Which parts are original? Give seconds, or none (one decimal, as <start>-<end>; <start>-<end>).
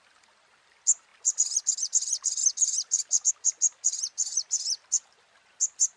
0.0-6.0